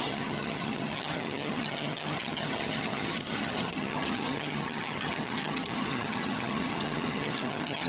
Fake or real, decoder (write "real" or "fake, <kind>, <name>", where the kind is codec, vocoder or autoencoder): fake, vocoder, HiFi-GAN